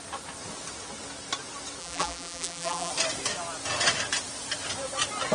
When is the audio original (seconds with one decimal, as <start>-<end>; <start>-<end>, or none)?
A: 0.0-1.8; 2.9-5.3